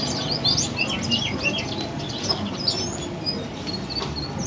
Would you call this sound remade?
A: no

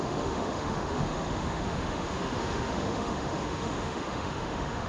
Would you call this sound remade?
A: yes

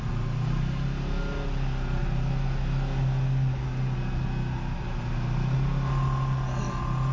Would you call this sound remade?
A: no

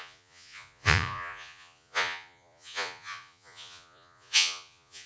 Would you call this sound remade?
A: yes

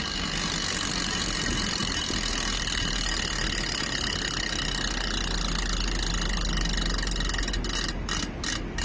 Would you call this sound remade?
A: no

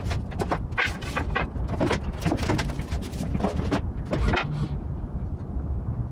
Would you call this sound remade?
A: no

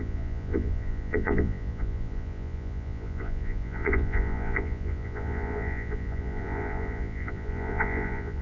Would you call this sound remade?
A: yes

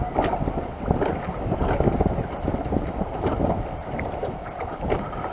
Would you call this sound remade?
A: no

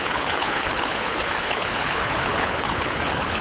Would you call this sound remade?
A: yes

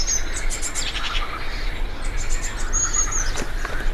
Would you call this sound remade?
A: no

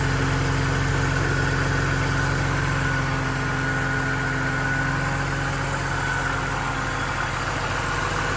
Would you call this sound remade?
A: no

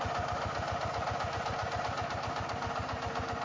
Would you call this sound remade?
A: no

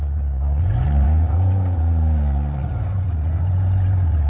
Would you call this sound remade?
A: yes